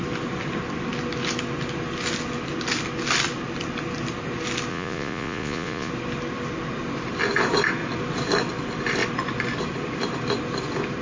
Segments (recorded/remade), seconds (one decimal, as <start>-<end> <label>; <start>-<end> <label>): 0.0-4.7 recorded; 4.7-5.9 remade; 5.9-11.0 recorded